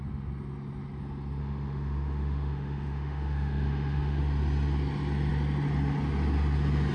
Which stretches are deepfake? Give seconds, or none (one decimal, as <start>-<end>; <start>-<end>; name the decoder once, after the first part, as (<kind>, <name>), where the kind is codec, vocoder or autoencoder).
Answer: 1.4-4.2 (autoencoder, DAC-VAE)